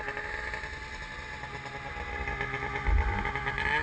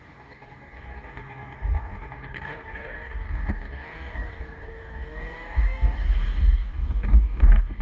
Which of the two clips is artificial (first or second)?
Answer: second